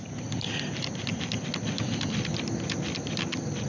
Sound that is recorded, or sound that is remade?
recorded